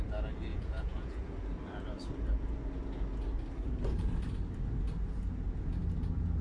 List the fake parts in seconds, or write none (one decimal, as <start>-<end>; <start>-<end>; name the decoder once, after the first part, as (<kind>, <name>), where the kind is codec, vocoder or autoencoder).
0.5-1.3 (vocoder, Vocos)